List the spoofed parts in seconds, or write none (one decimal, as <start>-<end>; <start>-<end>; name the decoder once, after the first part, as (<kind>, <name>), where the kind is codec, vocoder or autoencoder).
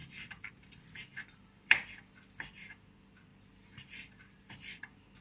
0.0-0.5 (vocoder, BigVGAN v2); 1.1-1.8; 3.3-4.5